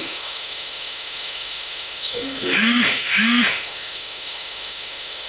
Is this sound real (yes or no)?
no